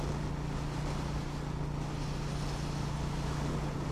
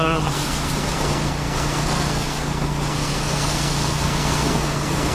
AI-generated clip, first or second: second